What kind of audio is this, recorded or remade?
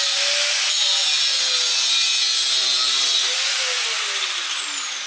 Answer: recorded